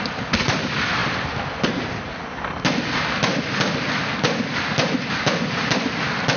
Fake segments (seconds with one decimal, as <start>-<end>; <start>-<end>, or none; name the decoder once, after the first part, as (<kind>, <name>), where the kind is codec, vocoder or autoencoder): none